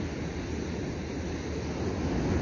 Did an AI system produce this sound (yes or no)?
no